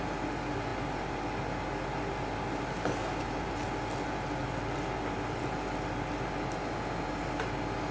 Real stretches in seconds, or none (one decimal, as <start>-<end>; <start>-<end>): 0.0-7.9